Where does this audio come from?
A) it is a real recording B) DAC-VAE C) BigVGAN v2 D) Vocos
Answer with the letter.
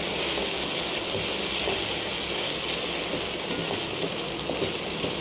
A